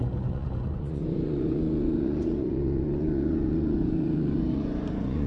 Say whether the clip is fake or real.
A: fake